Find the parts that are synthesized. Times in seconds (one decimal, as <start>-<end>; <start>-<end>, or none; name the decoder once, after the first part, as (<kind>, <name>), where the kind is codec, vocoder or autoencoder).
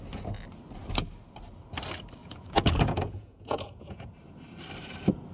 2.2-4.1 (vocoder, Vocos)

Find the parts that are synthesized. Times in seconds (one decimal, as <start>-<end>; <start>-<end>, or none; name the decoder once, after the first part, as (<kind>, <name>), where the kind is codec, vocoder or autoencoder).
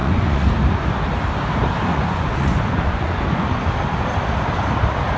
0.0-0.5 (vocoder, Vocos); 1.9-3.7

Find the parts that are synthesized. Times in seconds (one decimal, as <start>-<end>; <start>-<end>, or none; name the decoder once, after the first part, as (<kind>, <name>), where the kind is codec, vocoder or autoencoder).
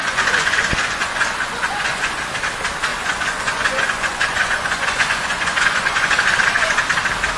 0.0-2.2 (vocoder, Vocos); 2.9-6.8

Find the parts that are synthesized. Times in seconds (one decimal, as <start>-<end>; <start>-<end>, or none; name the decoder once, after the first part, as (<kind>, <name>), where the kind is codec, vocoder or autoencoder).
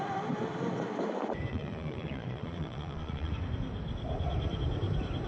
1.5-3.3 (vocoder, Vocos)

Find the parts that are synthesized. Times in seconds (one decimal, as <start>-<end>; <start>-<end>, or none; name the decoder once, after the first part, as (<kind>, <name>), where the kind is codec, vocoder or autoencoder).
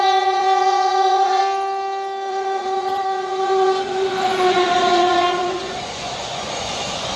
0.0-1.4 (vocoder, Vocos); 2.3-7.2